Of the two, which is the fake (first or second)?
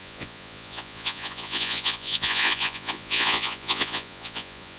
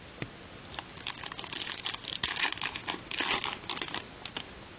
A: first